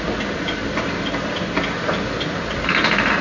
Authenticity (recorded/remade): recorded